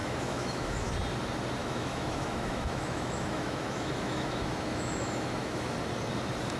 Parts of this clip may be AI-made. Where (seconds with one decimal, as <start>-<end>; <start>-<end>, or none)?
0.0-0.9; 1.6-5.6